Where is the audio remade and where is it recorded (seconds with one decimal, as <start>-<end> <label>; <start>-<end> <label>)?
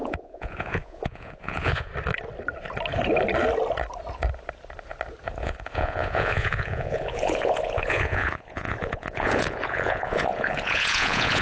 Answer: 0.0-1.9 remade; 1.9-5.4 recorded; 5.4-11.4 remade